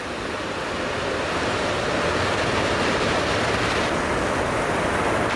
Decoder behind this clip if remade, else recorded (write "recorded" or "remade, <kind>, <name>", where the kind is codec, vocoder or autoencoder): recorded